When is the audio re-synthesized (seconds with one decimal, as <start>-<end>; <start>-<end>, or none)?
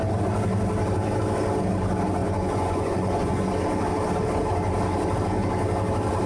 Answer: 2.2-3.5